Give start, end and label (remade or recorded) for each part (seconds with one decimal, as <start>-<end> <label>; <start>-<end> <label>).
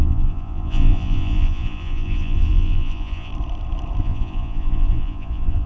0.0-3.3 remade; 3.3-4.0 recorded; 4.0-5.7 remade